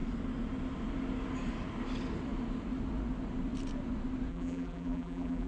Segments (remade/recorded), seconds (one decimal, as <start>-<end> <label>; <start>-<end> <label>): 0.0-4.3 recorded; 4.3-5.5 remade